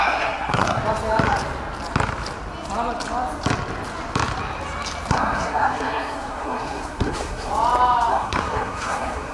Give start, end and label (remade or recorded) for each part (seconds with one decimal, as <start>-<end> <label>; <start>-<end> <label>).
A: 0.0-0.8 remade; 0.8-5.1 recorded; 5.1-7.5 remade; 7.5-8.1 recorded; 8.1-9.3 remade